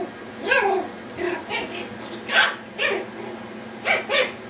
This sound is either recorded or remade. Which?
recorded